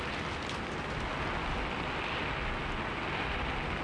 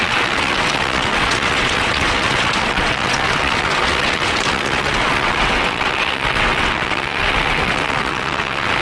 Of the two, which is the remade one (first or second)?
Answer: second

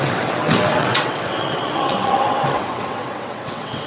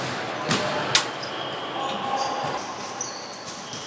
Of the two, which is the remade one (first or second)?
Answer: first